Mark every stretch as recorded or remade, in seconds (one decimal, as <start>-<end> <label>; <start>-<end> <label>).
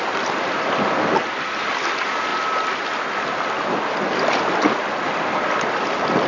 0.0-6.3 recorded